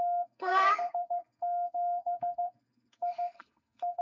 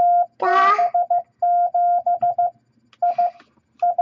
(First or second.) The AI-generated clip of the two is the first